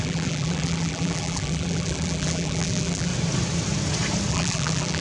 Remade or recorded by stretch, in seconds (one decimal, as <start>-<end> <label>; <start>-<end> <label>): 0.0-3.1 remade; 3.1-4.3 recorded; 4.3-5.0 remade